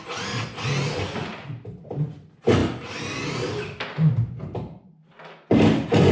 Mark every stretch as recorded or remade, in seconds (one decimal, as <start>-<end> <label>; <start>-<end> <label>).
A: 0.0-6.1 recorded